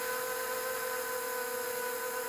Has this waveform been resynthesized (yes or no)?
no